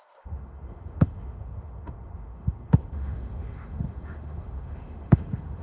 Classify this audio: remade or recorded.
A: remade